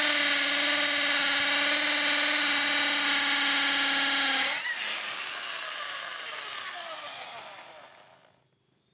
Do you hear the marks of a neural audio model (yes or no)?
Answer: no